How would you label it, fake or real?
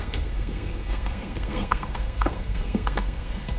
fake